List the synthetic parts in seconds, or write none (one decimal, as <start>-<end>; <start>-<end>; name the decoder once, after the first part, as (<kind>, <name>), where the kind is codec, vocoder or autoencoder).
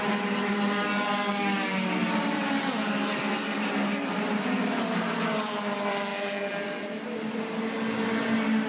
none